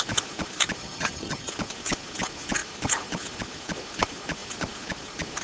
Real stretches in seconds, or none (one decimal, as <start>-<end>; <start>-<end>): 0.0-0.8; 1.5-5.4